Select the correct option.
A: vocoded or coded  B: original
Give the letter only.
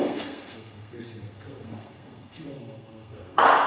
A